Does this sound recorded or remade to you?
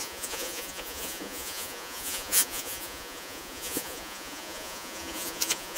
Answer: remade